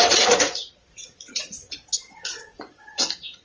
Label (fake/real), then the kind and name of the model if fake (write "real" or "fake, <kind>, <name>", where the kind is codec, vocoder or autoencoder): fake, vocoder, Vocos